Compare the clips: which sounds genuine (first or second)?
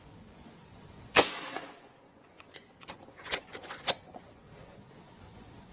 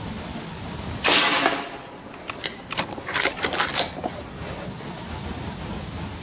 second